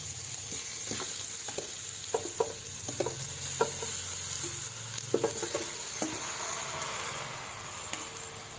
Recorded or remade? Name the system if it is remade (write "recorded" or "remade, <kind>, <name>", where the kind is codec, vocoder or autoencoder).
recorded